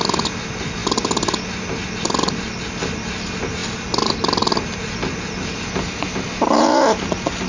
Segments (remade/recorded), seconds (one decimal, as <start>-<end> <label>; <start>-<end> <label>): 0.0-7.5 recorded